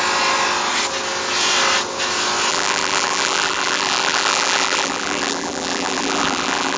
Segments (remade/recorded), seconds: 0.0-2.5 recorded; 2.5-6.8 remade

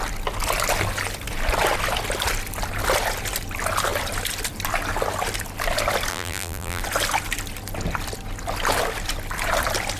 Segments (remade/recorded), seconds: 0.0-6.1 recorded; 6.1-6.8 remade; 6.8-10.0 recorded

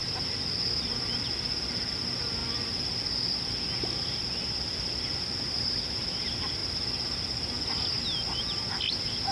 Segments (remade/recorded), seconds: 0.0-1.8 remade; 1.8-2.4 recorded; 2.4-3.0 remade; 3.0-9.3 recorded

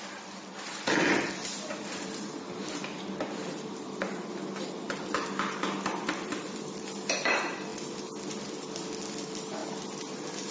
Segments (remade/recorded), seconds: 0.0-10.5 recorded

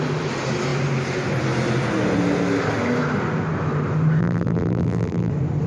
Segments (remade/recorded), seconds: 0.0-4.2 recorded; 4.2-5.3 remade; 5.3-5.7 recorded